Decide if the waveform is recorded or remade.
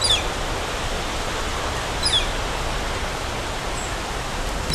recorded